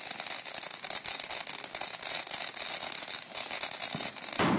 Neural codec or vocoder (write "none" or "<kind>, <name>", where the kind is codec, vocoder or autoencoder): none